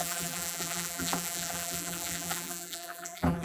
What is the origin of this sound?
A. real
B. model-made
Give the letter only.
B